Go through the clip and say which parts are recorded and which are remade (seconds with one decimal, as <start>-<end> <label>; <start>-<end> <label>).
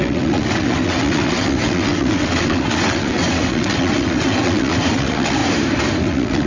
0.0-5.4 remade; 5.4-6.0 recorded; 6.0-6.5 remade